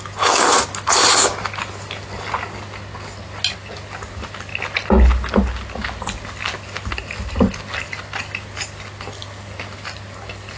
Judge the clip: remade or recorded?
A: recorded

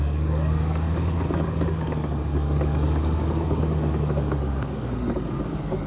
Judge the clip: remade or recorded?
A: remade